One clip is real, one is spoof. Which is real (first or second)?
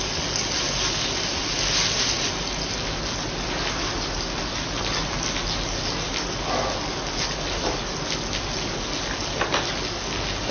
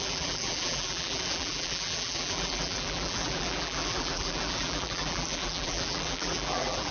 first